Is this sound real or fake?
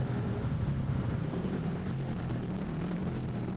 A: fake